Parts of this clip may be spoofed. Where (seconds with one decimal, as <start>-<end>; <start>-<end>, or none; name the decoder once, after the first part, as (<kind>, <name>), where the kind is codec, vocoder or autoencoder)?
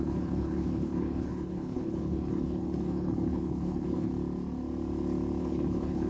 0.0-4.1 (codec, HILCodec); 5.4-6.1